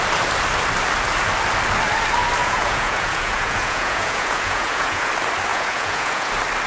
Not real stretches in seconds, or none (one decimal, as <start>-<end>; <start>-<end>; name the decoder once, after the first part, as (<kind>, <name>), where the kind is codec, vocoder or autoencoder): 2.4-5.1 (vocoder, Vocos); 5.5-6.3